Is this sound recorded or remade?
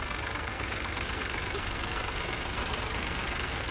remade